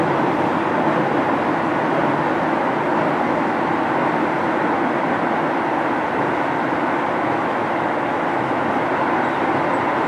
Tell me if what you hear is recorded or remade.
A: recorded